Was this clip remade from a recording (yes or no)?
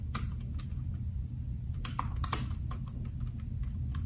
no